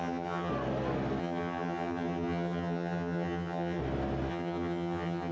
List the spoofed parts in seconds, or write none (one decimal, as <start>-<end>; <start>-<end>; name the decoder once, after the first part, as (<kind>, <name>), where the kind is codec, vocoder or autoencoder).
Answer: 0.0-0.5 (vocoder, HiFi-GAN); 1.2-3.8; 4.3-5.3